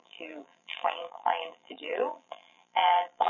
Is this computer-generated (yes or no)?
yes